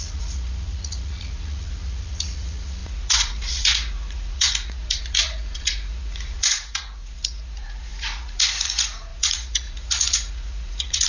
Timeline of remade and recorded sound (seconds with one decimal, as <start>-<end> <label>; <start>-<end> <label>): 0.0-11.1 remade